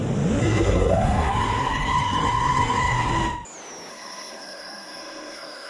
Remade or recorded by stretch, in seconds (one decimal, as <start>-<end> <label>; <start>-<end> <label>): 0.0-0.4 recorded; 0.4-3.1 remade; 3.1-3.9 recorded; 3.9-5.7 remade